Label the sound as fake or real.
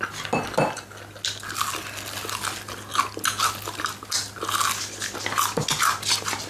real